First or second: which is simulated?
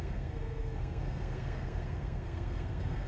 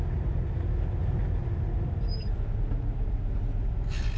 first